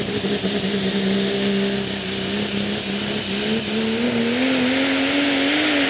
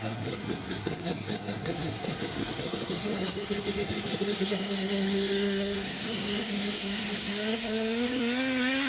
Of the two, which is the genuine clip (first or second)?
first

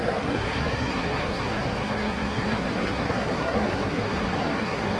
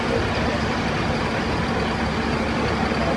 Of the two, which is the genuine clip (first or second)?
second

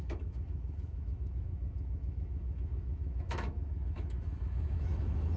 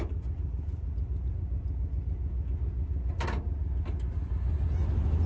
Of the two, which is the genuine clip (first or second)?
second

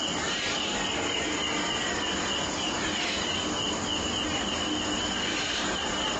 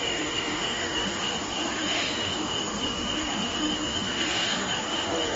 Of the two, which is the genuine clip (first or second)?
first